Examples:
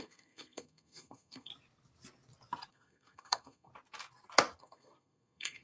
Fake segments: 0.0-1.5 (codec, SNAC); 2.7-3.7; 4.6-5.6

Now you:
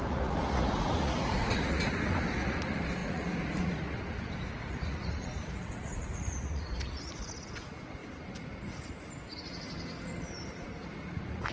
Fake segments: 0.0-8.0 (vocoder, Vocos); 10.5-11.5